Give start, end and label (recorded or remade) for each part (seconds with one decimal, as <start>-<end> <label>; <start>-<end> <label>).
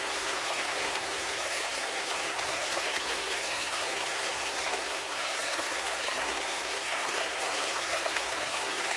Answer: 0.0-9.0 remade